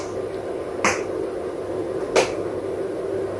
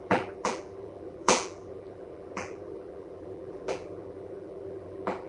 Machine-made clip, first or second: second